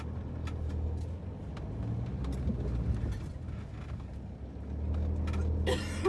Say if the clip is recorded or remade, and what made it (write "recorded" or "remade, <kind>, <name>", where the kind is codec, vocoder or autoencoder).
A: recorded